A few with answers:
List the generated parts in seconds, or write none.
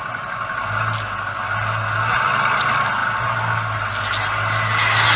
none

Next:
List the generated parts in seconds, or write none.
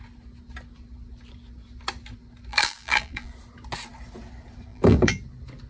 2.5-3.3 (vocoder, BigVGAN v2); 4.7-5.2